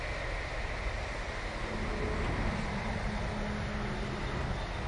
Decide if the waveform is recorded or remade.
recorded